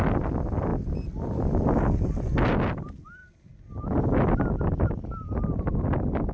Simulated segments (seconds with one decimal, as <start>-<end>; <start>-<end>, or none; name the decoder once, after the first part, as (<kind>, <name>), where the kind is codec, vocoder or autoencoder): none

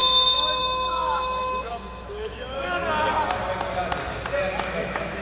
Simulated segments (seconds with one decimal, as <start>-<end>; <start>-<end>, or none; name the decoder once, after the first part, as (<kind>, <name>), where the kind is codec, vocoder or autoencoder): 0.6-2.8 (autoencoder, DAC-VAE); 4.6-5.2

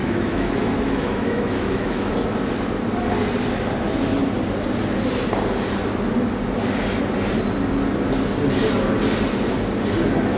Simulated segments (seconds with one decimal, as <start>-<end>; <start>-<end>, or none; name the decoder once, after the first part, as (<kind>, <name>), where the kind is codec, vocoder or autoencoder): 0.0-2.1 (autoencoder, DAC-VAE)